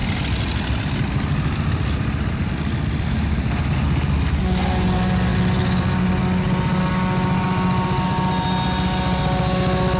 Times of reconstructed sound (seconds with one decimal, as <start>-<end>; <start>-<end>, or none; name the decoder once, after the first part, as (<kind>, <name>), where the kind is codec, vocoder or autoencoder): none